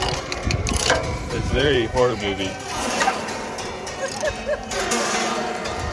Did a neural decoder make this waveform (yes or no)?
yes